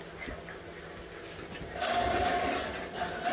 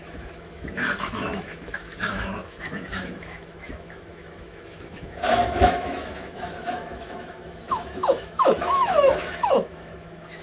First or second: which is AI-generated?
second